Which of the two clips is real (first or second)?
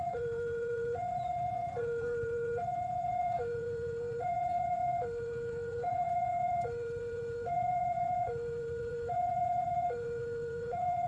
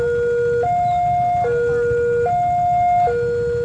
second